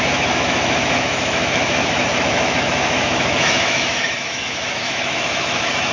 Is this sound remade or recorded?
remade